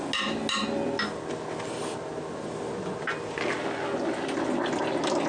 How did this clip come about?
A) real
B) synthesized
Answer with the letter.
A